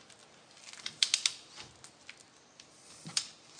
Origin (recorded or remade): recorded